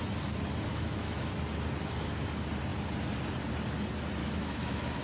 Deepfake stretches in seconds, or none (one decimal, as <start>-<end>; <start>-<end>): 0.7-1.3; 4.2-5.0